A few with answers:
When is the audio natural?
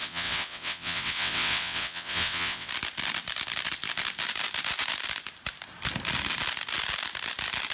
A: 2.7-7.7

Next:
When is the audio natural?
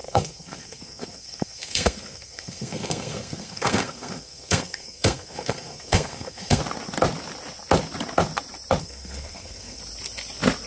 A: 6.6-8.8; 9.8-10.7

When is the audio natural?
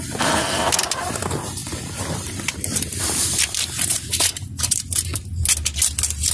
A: 5.1-6.3